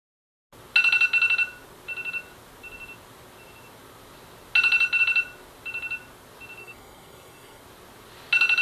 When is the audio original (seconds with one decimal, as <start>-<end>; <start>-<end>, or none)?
0.0-6.6; 7.6-8.6